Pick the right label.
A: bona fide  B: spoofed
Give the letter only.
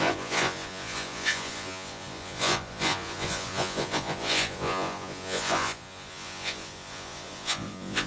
B